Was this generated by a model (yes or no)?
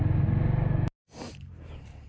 no